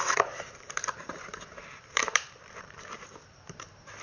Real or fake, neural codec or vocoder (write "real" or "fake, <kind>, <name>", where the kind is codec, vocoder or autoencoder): fake, vocoder, BigVGAN v2